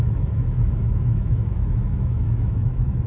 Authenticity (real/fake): fake